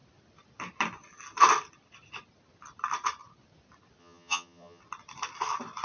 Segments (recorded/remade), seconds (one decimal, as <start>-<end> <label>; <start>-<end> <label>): 0.0-4.0 recorded; 4.0-4.8 remade; 4.8-5.8 recorded